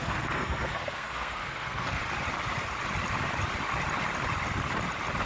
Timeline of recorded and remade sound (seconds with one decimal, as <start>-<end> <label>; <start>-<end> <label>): 0.0-2.0 remade; 2.0-5.3 recorded